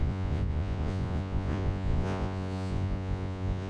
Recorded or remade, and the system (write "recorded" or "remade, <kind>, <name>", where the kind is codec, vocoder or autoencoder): remade, vocoder, Vocos